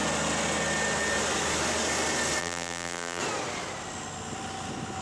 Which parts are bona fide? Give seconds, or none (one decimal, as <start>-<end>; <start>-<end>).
0.0-2.4; 3.2-5.0